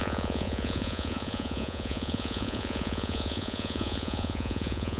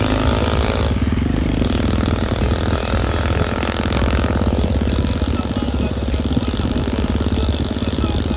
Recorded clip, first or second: second